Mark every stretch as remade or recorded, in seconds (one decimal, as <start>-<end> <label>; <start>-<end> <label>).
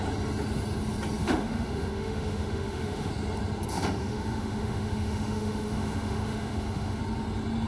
0.0-1.2 recorded; 1.2-3.1 remade; 3.1-3.7 recorded; 3.7-7.0 remade; 7.0-7.7 recorded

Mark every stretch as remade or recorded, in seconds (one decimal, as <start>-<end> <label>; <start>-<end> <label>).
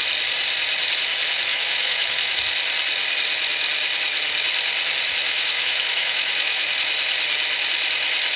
0.0-1.5 recorded; 1.5-2.4 remade; 2.4-5.2 recorded; 5.2-6.7 remade; 6.7-8.4 recorded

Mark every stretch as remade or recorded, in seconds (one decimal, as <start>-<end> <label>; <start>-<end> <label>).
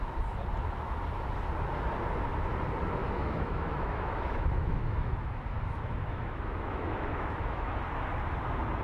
0.0-3.0 recorded; 3.0-7.8 remade; 7.8-8.8 recorded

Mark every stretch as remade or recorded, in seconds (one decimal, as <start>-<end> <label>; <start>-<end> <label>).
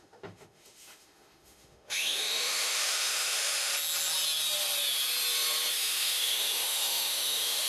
0.0-3.7 remade; 3.7-5.7 recorded; 5.7-7.7 remade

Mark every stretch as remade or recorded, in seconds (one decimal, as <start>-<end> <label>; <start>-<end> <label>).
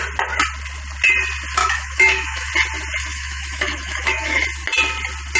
0.0-1.6 recorded; 1.6-2.5 remade; 2.5-3.1 recorded; 3.1-4.4 remade; 4.4-5.4 recorded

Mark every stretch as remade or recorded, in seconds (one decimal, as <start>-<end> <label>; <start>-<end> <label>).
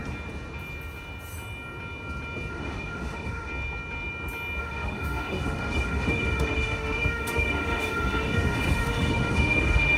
0.0-2.5 recorded; 2.5-3.5 remade; 3.5-4.6 recorded; 4.6-10.0 remade